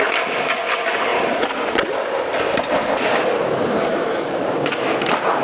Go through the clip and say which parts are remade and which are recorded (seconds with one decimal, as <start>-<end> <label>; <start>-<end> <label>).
0.0-3.9 recorded; 3.9-4.4 remade; 4.4-5.4 recorded

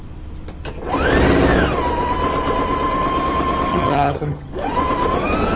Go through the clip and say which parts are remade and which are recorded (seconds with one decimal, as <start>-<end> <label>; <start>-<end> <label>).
0.0-3.7 recorded; 3.7-4.5 remade; 4.5-5.6 recorded

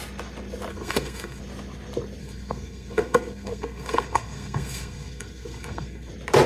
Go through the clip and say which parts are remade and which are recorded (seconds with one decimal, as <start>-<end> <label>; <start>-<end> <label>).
0.0-0.7 recorded; 0.7-1.4 remade; 1.4-2.2 recorded; 2.2-6.1 remade; 6.1-6.5 recorded

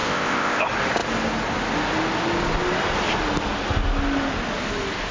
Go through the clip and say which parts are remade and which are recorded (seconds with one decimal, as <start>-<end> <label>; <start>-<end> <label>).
0.0-0.6 remade; 0.6-5.1 recorded

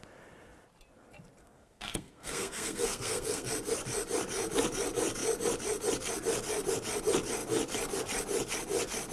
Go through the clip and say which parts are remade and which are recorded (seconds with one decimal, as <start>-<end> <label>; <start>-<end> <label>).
0.0-1.4 recorded; 1.4-3.5 remade; 3.5-9.1 recorded

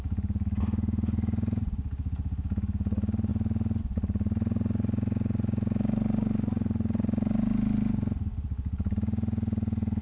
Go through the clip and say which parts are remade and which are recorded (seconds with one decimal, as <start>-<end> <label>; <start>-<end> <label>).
0.0-10.0 recorded

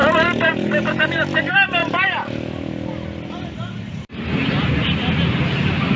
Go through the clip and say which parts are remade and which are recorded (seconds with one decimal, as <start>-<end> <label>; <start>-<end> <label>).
0.0-1.4 remade; 1.4-1.8 recorded; 1.8-2.5 remade; 2.5-4.4 recorded; 4.4-4.9 remade; 4.9-6.0 recorded

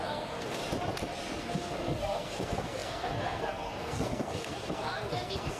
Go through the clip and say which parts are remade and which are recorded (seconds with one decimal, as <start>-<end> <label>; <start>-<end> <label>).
0.0-0.6 remade; 0.6-1.4 recorded; 1.4-5.6 remade